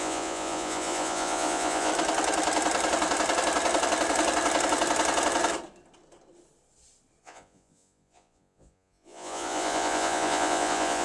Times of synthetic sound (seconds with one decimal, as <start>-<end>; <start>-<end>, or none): 0.0-1.9; 7.2-11.0